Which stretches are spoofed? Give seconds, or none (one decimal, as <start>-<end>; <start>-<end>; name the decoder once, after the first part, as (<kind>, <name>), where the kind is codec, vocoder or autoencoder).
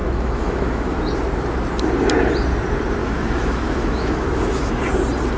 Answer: 0.0-1.0 (autoencoder, DAC-VAE); 3.0-4.8